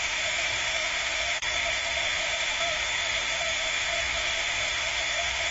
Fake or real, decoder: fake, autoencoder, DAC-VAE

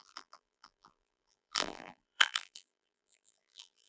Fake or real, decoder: fake, vocoder, BigVGAN v2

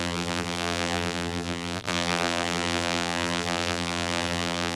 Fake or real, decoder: fake, vocoder, BigVGAN v2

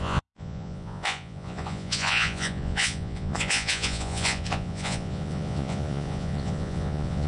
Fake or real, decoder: fake, vocoder, Vocos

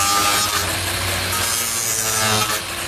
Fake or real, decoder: real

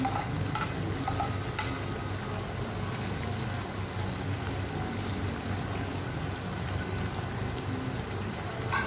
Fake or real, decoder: real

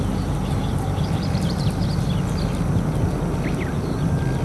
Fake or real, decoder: real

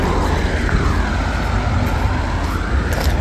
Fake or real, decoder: real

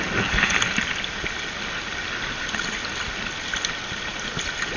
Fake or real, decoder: real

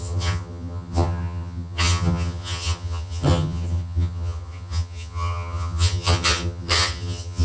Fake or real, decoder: fake, vocoder, HiFi-GAN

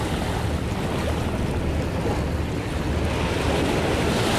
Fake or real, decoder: real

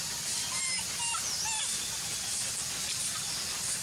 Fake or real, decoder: real